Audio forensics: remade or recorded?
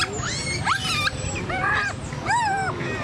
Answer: recorded